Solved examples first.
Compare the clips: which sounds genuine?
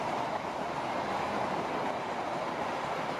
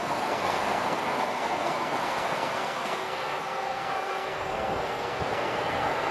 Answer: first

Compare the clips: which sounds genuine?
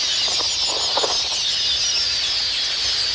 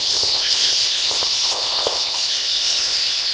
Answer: first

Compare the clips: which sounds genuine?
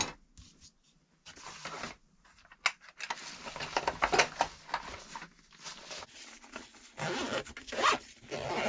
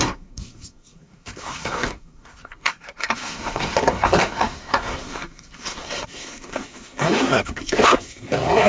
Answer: first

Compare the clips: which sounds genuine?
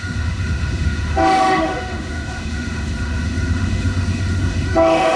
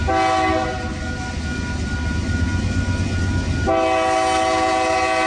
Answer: second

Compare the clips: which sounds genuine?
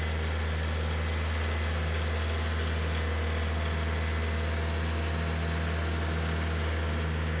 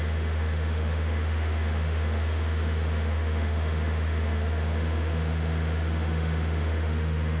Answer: first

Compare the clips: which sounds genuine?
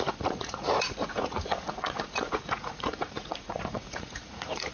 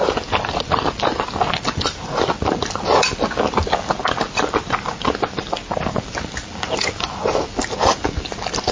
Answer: second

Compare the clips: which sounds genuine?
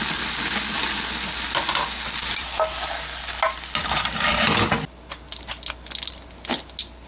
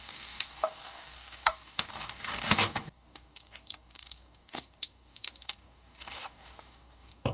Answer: first